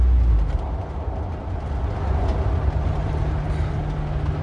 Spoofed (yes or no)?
no